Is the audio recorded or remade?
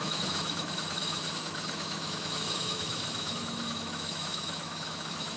remade